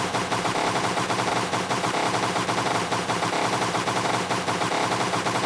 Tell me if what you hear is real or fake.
fake